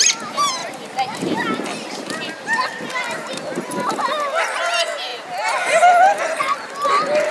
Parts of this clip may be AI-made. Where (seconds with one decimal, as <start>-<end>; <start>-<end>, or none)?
0.6-3.4